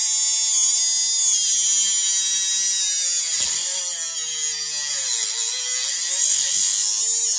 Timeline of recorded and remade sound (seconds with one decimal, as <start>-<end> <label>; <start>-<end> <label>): 0.0-7.4 recorded